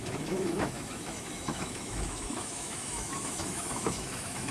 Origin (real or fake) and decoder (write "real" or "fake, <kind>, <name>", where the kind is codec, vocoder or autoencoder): fake, autoencoder, DAC-VAE